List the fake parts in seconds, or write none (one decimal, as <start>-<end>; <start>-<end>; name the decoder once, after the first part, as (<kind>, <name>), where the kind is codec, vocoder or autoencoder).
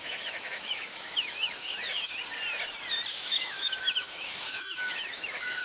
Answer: 0.0-2.2 (autoencoder, DAC-VAE); 3.1-5.6